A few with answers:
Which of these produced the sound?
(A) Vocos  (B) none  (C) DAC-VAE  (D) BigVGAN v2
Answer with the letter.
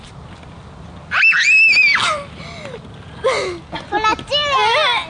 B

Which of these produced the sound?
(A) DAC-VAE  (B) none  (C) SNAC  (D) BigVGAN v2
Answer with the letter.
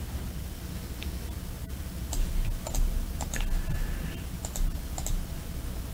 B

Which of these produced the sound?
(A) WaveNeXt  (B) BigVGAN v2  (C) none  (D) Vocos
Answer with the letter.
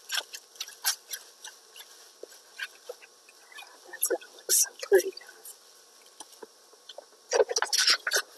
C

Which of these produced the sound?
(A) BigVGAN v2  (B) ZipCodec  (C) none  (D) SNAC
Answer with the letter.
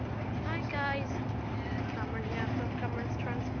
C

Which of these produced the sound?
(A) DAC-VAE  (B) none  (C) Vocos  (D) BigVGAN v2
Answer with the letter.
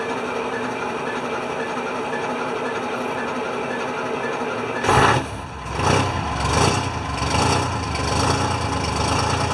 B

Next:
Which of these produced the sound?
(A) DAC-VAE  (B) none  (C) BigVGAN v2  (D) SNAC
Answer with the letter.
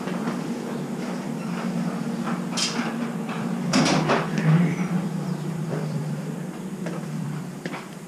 C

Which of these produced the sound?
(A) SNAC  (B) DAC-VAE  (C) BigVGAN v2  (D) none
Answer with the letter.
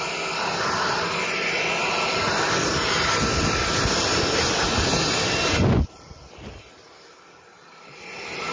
C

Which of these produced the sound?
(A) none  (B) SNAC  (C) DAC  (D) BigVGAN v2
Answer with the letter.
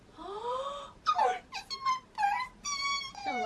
D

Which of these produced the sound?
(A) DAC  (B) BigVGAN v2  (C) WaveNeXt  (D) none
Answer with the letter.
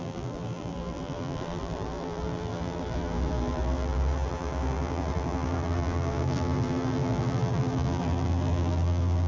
B